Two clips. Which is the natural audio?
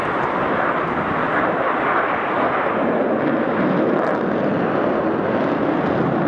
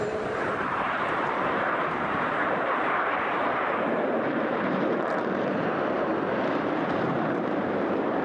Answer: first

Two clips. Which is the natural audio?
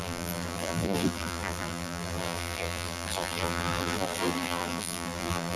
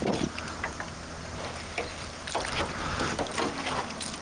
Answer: second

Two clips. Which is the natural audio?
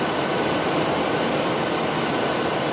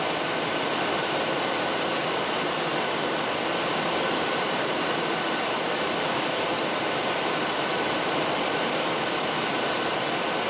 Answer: first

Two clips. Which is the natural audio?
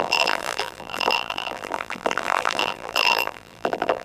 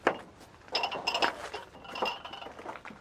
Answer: second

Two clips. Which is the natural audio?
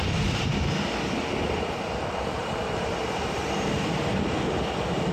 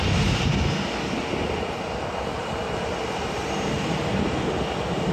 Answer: second